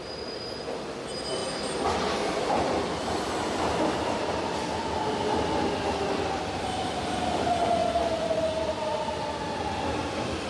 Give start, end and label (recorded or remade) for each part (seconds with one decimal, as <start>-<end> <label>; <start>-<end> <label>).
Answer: 0.0-10.5 recorded